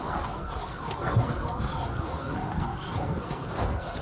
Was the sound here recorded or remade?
remade